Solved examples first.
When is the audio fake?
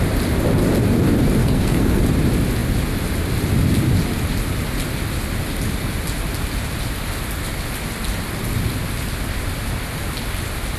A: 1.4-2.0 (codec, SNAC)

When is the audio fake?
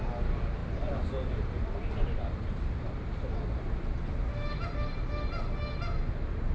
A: 0.6-4.5 (vocoder, BigVGAN v2)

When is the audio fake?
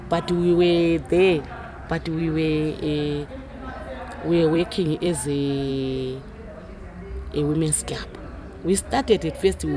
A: 2.2-3.8 (vocoder, BigVGAN v2); 4.4-5.7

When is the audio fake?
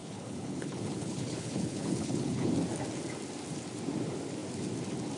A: 0.0-2.5 (codec, HILCodec)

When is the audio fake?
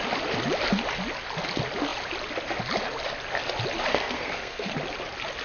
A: 3.9-4.7 (codec, SNAC)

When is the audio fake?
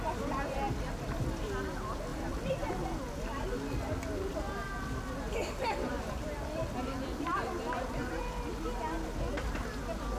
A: 2.1-2.7 (vocoder, BigVGAN v2); 5.4-8.1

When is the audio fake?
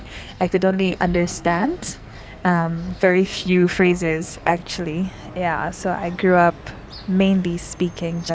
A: 0.0-4.6 (codec, SNAC)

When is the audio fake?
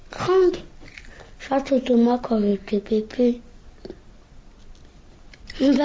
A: none